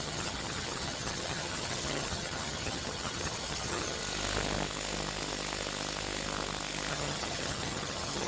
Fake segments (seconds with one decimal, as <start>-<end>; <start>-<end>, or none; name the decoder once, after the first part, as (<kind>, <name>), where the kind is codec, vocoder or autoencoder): 0.0-4.0 (vocoder, HiFi-GAN); 6.9-8.3

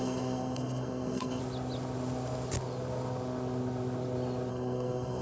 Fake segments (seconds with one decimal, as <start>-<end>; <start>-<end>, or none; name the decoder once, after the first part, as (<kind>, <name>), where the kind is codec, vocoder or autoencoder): 0.0-1.4 (codec, SNAC); 4.5-5.2

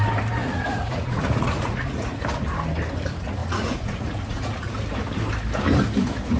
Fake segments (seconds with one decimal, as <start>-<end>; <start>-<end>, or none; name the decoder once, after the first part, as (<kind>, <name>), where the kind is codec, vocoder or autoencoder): 0.4-2.1 (vocoder, Vocos); 3.4-4.7

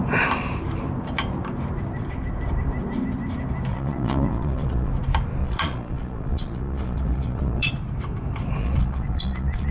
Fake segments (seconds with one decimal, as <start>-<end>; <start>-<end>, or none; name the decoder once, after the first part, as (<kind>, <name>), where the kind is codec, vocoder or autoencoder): 3.7-4.9 (vocoder, Vocos); 5.4-7.7; 8.6-9.7

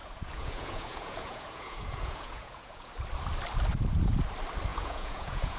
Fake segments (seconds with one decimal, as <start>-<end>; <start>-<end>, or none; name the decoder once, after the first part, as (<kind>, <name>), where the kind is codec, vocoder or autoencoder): 0.0-2.9 (vocoder, Vocos); 4.7-5.6

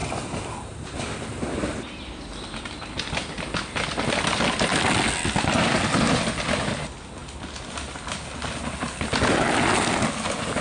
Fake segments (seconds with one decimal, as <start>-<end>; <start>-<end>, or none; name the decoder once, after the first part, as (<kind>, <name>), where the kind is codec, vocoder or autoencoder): none

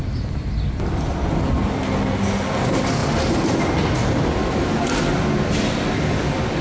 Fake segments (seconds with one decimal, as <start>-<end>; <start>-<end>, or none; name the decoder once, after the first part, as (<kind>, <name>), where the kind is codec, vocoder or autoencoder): none